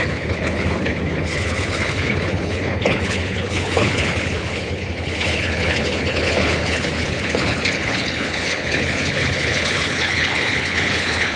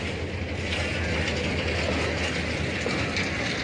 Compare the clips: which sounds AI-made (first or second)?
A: first